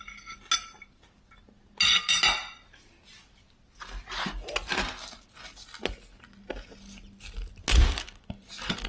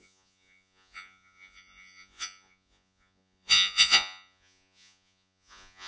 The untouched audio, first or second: first